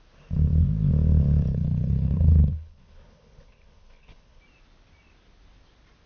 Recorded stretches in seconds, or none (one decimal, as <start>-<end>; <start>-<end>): 0.0-1.5; 4.4-6.1